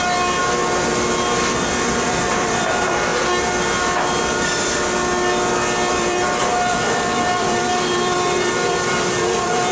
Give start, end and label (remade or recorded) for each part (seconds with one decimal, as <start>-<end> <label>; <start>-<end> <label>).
0.0-0.4 remade; 0.4-1.6 recorded; 1.6-3.1 remade; 3.1-5.9 recorded; 5.9-9.7 remade